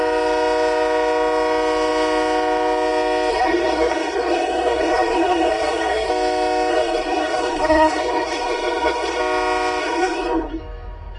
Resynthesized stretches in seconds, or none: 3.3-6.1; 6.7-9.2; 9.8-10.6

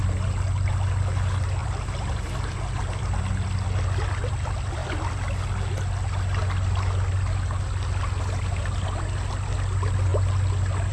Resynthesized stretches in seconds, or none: 1.6-3.2; 4.8-5.4

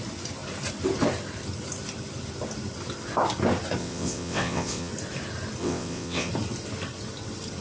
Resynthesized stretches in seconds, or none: 3.8-4.9; 5.6-6.3

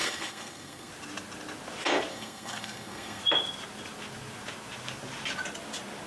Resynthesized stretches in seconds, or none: 0.0-0.9; 2.1-3.2

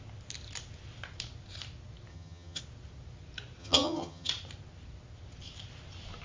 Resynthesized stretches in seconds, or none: 2.1-2.6; 3.6-4.3

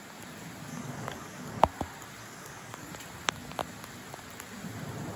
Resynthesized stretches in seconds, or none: 0.7-1.6; 2.2-2.9

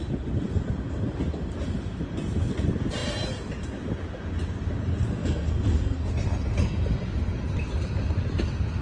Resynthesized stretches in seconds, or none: 5.2-6.1